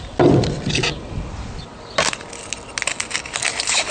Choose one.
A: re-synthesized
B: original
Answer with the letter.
B